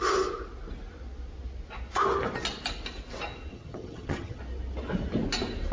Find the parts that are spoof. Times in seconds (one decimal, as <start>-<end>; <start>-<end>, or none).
3.5-4.4